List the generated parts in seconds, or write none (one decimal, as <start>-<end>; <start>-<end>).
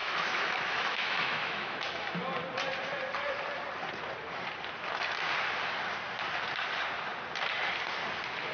0.0-1.8